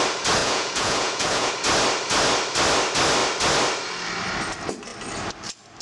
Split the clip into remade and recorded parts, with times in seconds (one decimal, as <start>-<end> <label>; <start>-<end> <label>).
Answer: 0.0-0.4 recorded; 0.4-1.5 remade; 1.5-5.8 recorded